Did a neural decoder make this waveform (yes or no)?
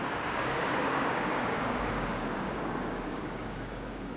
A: yes